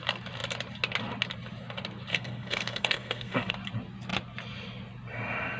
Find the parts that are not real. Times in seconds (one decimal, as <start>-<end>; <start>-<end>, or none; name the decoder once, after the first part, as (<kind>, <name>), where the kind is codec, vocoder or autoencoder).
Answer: 2.1-3.5 (codec, SNAC)